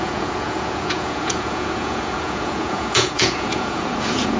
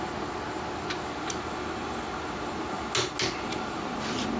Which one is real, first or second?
second